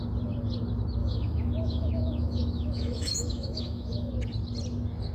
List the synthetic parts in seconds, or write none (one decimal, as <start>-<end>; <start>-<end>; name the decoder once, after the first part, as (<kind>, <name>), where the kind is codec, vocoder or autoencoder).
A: 1.0-4.1 (autoencoder, DAC-VAE)